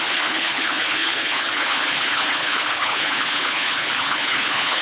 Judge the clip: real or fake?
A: fake